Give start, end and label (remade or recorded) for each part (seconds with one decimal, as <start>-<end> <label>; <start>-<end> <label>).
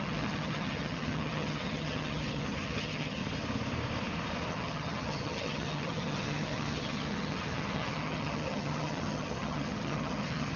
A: 0.0-3.2 remade; 3.2-4.5 recorded; 4.5-10.6 remade